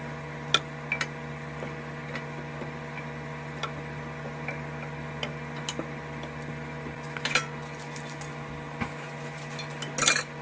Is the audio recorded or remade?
recorded